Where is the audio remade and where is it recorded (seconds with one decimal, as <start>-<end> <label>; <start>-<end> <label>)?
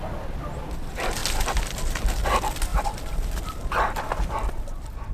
0.0-5.1 recorded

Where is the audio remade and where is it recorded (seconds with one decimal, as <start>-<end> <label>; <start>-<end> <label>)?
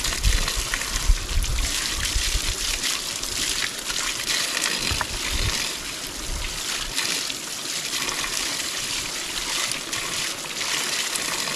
0.0-1.5 recorded; 1.5-3.6 remade; 3.6-7.6 recorded; 7.6-9.1 remade; 9.1-11.6 recorded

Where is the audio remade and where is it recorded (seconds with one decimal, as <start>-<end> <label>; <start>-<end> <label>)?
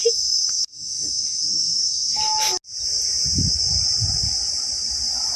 0.0-2.2 remade; 2.2-5.4 recorded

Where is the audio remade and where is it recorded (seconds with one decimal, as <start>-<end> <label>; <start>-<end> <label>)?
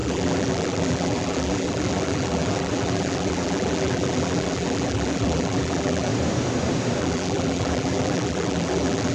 0.0-6.1 remade; 6.1-7.0 recorded; 7.0-9.1 remade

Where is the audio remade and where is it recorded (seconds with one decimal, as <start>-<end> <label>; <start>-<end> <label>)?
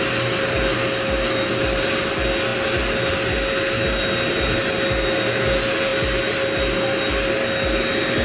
0.0-8.2 recorded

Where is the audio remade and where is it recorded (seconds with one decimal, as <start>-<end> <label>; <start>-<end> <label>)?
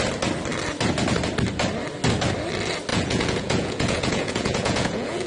0.0-2.9 recorded; 2.9-5.3 remade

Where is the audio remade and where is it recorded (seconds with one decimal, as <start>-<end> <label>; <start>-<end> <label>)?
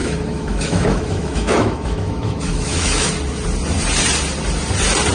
0.0-3.1 remade; 3.1-5.1 recorded